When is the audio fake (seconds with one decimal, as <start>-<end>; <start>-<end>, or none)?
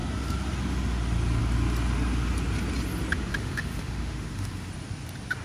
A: 3.3-4.7